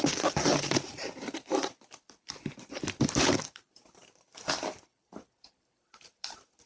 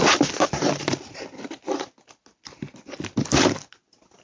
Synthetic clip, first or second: first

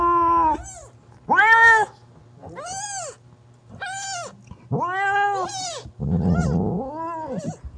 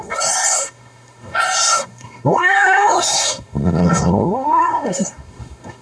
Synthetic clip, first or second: second